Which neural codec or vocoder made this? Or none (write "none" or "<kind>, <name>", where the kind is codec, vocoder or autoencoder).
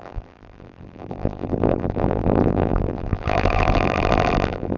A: vocoder, BigVGAN v2